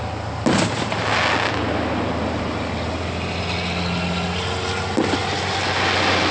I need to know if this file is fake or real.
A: real